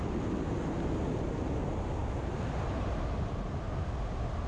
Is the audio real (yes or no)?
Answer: yes